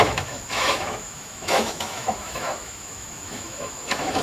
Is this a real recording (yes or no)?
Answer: no